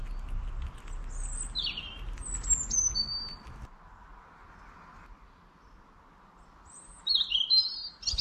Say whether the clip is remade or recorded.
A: recorded